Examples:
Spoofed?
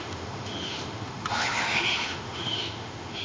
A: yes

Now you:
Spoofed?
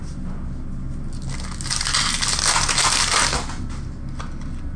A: no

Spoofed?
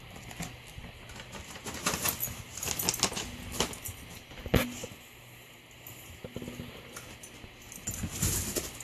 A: no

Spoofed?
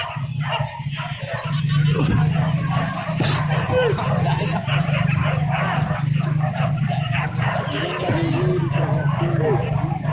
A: no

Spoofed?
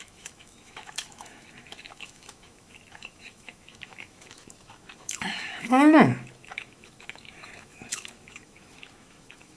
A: yes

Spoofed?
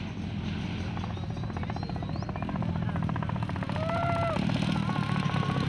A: no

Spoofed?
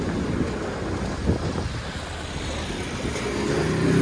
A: no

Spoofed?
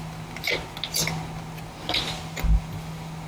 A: no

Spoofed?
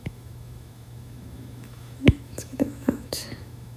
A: yes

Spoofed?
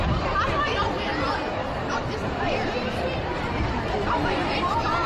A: no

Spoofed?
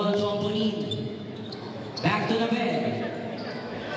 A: yes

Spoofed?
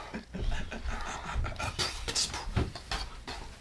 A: no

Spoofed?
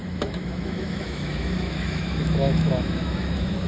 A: yes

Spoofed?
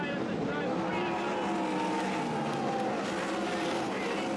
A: no